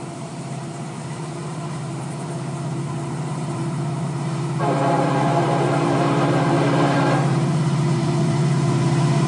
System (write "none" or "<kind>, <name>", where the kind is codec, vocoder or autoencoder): vocoder, BigVGAN v2